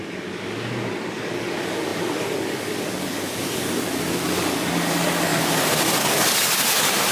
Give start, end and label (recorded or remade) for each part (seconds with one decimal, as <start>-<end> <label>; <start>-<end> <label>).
0.0-7.1 remade